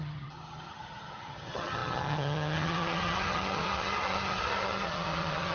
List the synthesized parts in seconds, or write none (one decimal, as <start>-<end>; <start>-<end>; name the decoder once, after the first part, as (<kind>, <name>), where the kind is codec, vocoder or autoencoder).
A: 0.0-5.5 (vocoder, HiFi-GAN)